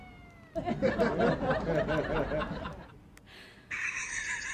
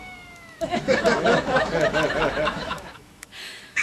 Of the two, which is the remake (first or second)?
second